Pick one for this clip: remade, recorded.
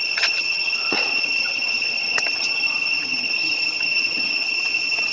remade